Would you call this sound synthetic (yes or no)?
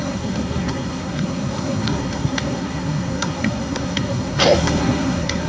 yes